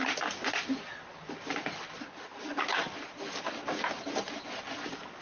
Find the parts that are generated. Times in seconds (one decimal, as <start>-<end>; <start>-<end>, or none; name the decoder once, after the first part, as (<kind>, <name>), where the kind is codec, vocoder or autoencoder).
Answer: none